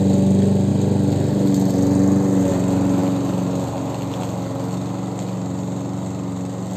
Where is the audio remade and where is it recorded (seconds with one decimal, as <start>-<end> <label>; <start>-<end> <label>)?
0.0-6.8 recorded